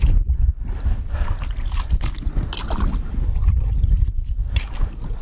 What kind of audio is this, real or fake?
real